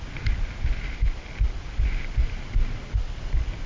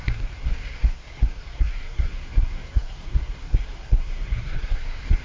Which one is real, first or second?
first